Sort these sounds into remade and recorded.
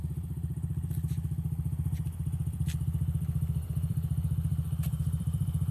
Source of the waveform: remade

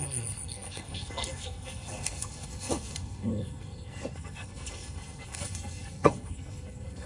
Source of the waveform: remade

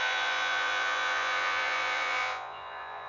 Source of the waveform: remade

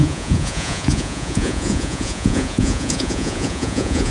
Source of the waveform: remade